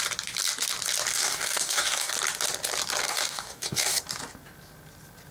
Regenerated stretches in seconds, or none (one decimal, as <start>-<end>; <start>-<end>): 1.1-2.1; 3.0-4.0